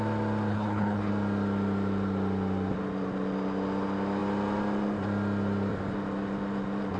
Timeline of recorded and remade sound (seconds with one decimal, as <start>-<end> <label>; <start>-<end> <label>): 0.0-0.5 recorded; 0.5-1.1 remade; 1.1-7.0 recorded